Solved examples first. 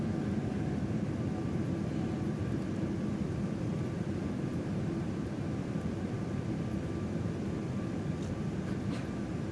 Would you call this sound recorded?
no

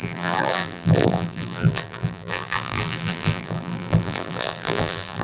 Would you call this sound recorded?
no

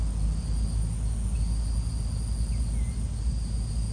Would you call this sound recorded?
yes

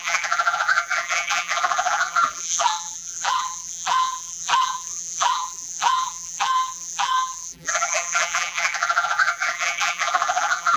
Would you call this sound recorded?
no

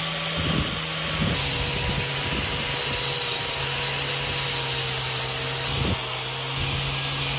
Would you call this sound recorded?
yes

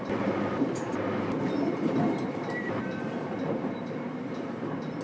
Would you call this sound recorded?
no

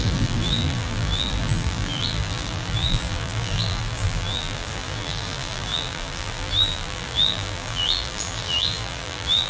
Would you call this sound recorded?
no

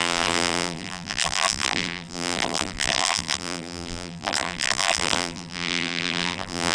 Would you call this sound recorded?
no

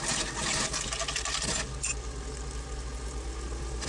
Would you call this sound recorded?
yes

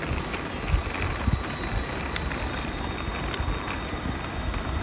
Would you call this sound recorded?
yes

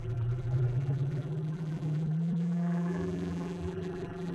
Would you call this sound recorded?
no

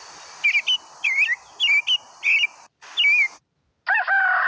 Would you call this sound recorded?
yes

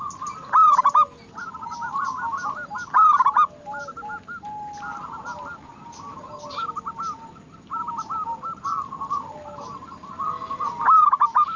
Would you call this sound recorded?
yes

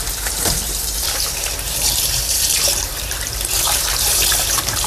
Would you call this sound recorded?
no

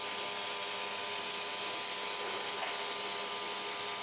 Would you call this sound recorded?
yes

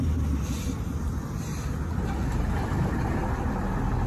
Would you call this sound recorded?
yes